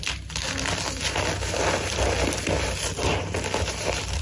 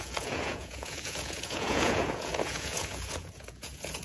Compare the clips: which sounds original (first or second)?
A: first